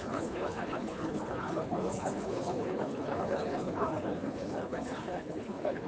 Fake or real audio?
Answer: fake